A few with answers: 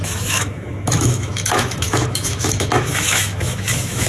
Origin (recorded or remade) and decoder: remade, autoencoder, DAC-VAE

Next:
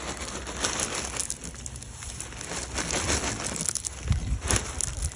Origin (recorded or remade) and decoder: recorded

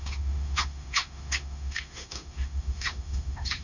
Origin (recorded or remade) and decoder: remade, autoencoder, DAC-VAE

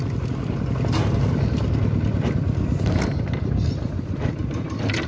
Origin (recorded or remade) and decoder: recorded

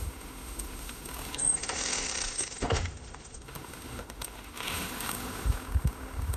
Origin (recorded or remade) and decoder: remade, autoencoder, DAC-VAE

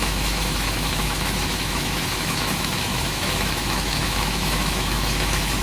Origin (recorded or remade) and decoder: remade, autoencoder, DAC-VAE